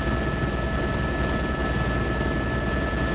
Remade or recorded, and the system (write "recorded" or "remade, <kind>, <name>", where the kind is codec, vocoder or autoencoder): recorded